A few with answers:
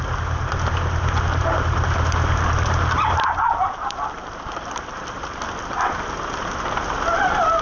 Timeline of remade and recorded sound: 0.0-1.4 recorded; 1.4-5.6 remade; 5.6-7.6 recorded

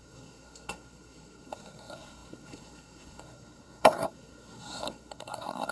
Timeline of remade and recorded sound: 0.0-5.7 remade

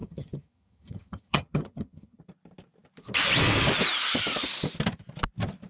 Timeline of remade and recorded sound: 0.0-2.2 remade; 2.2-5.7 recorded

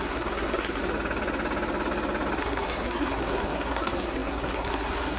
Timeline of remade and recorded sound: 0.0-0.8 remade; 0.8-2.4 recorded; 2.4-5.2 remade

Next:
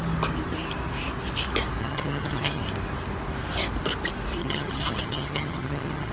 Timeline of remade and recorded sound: 0.0-1.8 recorded; 1.8-2.6 remade; 2.6-4.4 recorded; 4.4-6.1 remade